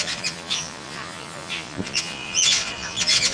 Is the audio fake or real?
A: fake